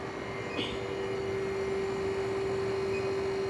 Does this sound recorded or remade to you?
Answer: recorded